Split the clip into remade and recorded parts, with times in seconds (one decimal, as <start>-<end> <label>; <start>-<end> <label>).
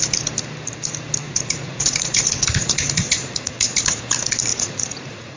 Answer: 0.0-1.2 recorded; 1.2-4.0 remade; 4.0-4.5 recorded; 4.5-5.4 remade